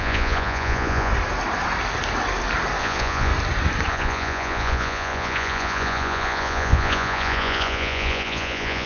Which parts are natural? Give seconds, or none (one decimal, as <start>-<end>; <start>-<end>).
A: 1.1-2.8; 3.3-3.9